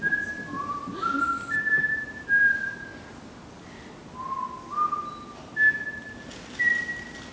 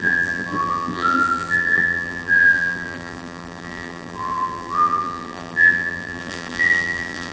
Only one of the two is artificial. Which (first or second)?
second